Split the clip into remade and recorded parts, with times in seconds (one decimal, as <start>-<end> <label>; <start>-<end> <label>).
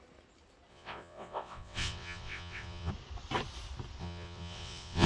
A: 0.0-0.7 recorded; 0.7-2.9 remade; 2.9-4.0 recorded; 4.0-5.1 remade